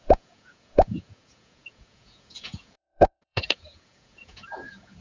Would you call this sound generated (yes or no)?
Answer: yes